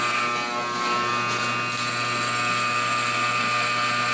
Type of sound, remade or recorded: recorded